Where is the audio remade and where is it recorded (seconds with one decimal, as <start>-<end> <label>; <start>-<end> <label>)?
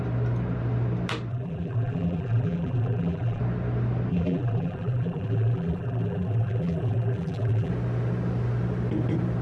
0.0-1.3 recorded; 1.3-3.4 remade; 3.4-4.1 recorded; 4.1-7.7 remade; 7.7-9.4 recorded